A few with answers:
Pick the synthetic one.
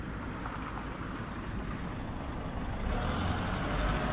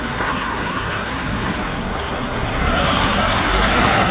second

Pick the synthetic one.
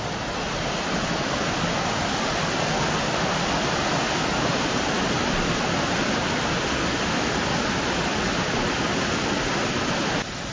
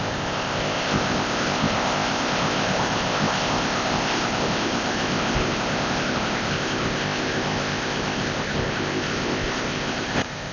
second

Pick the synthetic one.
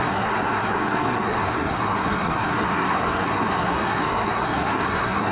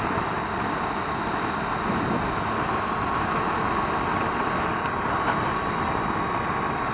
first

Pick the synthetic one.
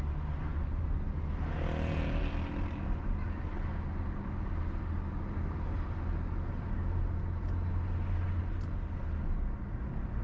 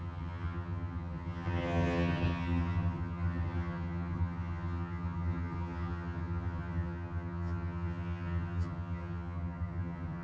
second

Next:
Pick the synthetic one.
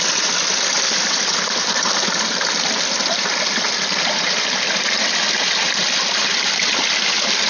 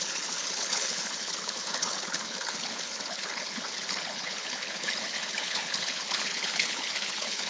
second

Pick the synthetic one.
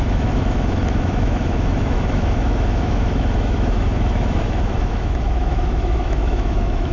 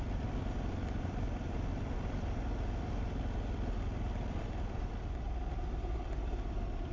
first